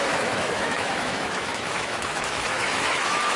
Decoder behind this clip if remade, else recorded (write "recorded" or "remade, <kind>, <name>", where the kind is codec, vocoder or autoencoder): remade, autoencoder, DAC-VAE